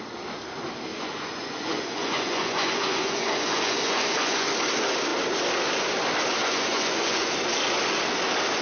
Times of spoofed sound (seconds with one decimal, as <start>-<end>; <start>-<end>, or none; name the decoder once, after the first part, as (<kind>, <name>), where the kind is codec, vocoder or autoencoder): 0.9-4.5 (vocoder, Vocos); 6.4-7.3